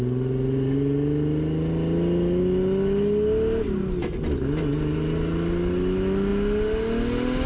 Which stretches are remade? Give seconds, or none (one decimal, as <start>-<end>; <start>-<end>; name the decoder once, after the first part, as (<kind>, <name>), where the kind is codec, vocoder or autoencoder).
none